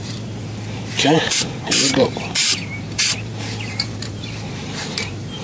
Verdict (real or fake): fake